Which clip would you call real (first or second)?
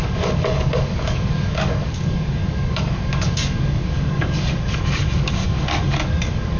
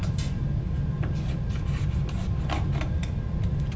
second